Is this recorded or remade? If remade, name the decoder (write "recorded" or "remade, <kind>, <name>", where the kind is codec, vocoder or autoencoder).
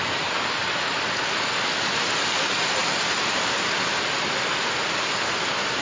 recorded